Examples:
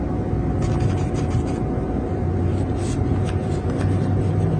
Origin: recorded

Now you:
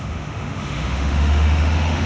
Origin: remade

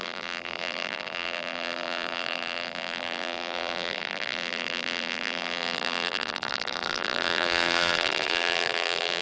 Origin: remade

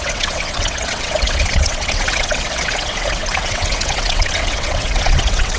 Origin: remade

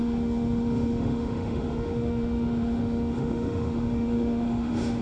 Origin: remade